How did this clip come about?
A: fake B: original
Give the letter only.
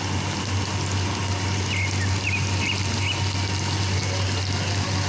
B